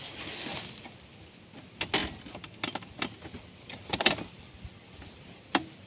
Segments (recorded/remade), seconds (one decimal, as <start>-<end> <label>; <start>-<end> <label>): 0.0-5.9 recorded